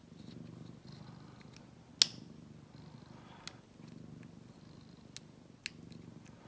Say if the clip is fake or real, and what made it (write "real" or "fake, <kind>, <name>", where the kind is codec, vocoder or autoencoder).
real